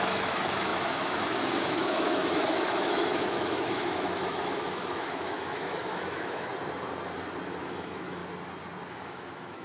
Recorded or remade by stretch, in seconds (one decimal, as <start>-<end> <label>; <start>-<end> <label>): 0.0-6.5 remade; 6.5-7.6 recorded; 7.6-8.2 remade; 8.2-8.9 recorded; 8.9-9.6 remade